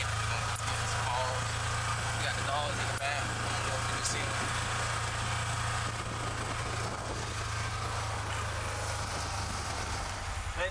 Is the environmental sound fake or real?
real